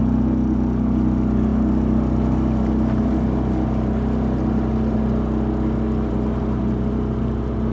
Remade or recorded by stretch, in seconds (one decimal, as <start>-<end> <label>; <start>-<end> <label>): 0.0-7.7 recorded